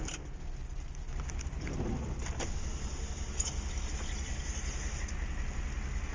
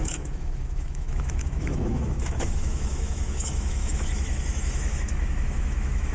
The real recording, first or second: first